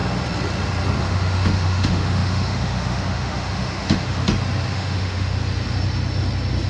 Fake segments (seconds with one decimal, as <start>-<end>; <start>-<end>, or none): 1.0-4.2; 4.7-5.4